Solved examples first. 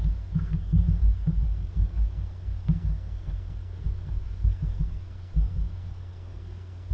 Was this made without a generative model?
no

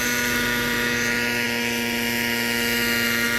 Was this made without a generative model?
yes